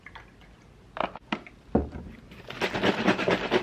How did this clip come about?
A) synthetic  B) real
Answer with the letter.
B